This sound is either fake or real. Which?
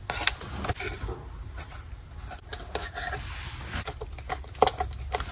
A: real